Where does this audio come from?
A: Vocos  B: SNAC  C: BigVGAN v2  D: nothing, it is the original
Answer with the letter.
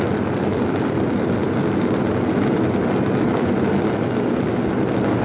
D